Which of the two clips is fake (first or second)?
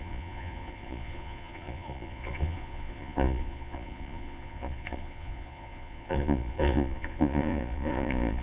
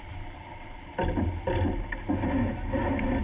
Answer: first